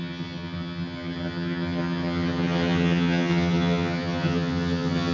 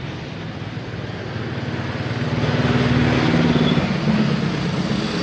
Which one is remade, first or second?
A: first